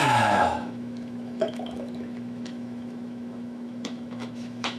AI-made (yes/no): yes